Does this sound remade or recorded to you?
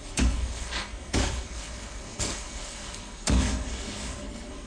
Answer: remade